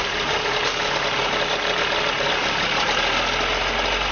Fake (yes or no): no